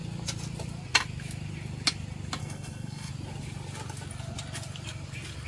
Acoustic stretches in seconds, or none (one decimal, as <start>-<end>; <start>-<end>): 0.0-2.4; 3.1-5.5